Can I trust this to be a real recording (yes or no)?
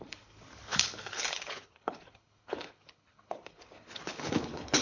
no